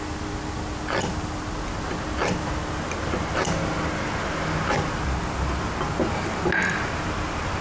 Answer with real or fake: real